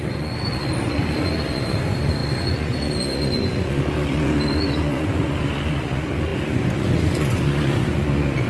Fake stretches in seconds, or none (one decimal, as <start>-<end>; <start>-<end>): 0.0-8.5